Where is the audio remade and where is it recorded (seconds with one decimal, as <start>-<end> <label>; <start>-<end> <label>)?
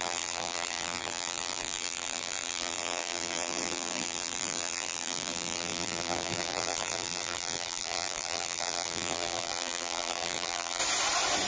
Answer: 0.0-10.8 remade; 10.8-11.5 recorded